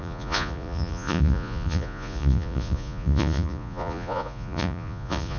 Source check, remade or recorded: remade